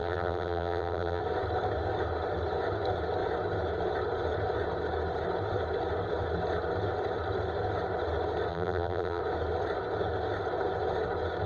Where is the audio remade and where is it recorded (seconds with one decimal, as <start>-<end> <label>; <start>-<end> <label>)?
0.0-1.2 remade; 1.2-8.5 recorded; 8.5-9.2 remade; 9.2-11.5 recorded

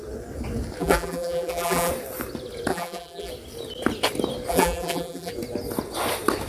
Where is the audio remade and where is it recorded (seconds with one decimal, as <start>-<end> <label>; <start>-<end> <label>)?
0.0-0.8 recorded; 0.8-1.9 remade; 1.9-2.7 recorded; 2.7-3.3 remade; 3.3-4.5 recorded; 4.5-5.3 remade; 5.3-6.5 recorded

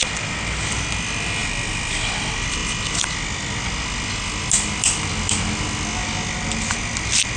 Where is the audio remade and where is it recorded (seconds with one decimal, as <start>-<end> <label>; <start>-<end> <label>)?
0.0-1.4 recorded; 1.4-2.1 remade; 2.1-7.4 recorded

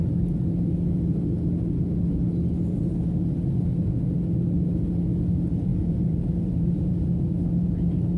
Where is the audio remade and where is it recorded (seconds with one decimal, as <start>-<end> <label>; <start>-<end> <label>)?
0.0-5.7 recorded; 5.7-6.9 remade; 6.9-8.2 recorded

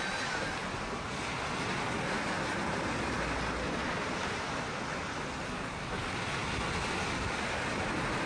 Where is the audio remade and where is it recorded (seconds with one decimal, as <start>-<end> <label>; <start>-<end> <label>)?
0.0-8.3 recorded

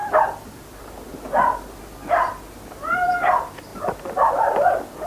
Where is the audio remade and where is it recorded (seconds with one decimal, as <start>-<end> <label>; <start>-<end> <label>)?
0.0-5.1 recorded

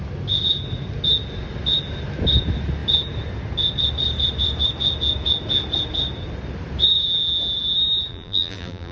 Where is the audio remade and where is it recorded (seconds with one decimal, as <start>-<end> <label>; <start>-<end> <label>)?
0.0-8.1 recorded; 8.1-8.9 remade